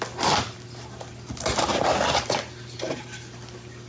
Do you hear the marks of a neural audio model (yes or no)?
no